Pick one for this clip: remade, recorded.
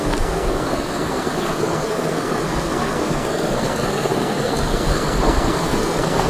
remade